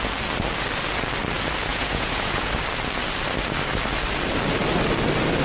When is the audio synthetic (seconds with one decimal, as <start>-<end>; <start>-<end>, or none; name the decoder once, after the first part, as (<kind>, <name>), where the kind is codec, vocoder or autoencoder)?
1.7-2.5 (vocoder, Vocos)